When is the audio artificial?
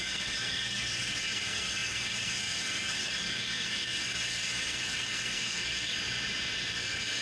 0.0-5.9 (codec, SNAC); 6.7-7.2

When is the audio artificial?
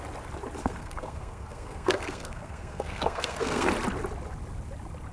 0.6-3.7 (codec, SNAC)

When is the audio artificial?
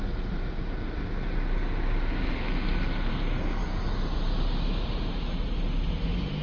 3.1-3.6 (codec, SNAC)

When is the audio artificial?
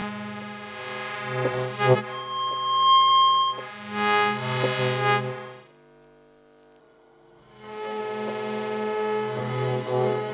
6.8-8.0 (codec, SNAC); 9.4-10.3